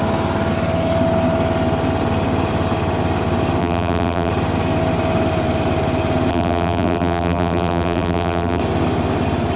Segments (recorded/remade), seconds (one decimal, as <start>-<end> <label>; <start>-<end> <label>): 0.0-3.6 recorded; 3.6-4.3 remade; 4.3-6.3 recorded; 6.3-8.6 remade; 8.6-9.6 recorded

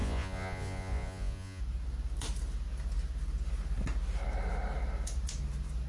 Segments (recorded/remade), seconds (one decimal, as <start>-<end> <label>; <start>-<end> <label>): 0.0-1.6 remade; 1.6-5.9 recorded

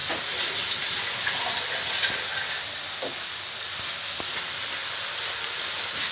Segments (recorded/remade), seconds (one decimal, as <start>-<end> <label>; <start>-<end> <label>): 0.0-6.1 recorded

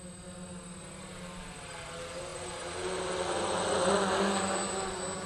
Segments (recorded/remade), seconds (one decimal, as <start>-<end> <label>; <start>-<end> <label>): 0.0-5.3 recorded

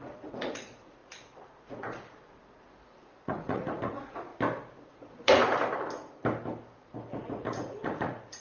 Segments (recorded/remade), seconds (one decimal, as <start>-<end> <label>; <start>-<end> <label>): 0.0-4.3 remade; 4.3-4.9 recorded; 4.9-5.4 remade; 5.4-7.2 recorded; 7.2-8.4 remade

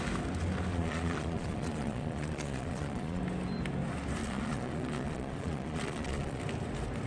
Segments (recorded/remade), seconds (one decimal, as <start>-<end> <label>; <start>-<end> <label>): 0.0-0.7 recorded; 0.7-3.2 remade; 3.2-4.2 recorded; 4.2-6.4 remade; 6.4-7.1 recorded